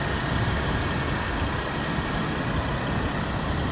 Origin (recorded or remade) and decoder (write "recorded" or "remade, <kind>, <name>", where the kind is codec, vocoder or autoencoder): recorded